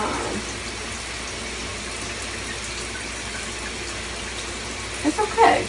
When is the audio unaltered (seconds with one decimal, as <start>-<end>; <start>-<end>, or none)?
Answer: 0.0-5.7